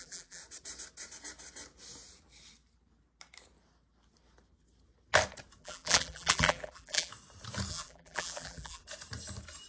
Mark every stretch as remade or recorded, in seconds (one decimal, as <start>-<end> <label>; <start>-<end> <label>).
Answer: 0.0-0.4 remade; 0.4-5.6 recorded; 5.6-7.1 remade; 7.1-7.7 recorded; 7.7-8.8 remade; 8.8-9.7 recorded